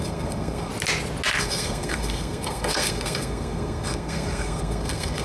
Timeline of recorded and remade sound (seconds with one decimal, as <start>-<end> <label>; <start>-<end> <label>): 0.0-0.7 remade; 0.7-1.4 recorded; 1.4-5.2 remade

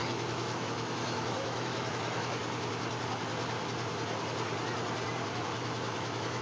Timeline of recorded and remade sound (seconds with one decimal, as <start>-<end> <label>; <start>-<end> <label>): 0.0-2.4 remade; 2.4-5.3 recorded; 5.3-6.4 remade